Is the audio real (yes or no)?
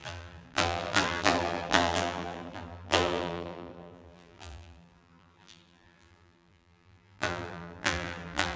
no